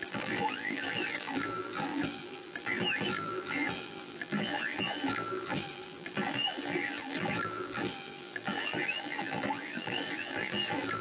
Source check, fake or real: fake